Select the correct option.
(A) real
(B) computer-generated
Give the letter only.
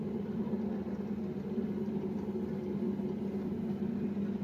A